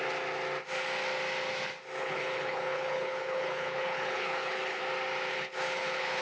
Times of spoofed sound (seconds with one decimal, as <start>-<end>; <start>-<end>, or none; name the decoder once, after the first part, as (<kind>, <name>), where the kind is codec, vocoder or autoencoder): 2.0-4.8 (codec, HILCodec); 5.3-6.2